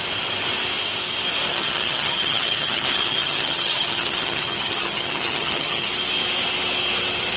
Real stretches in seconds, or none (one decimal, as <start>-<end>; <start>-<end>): 0.0-1.5; 5.9-7.4